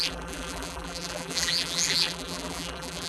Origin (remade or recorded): remade